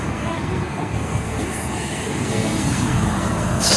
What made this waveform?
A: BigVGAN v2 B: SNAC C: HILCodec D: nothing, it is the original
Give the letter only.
B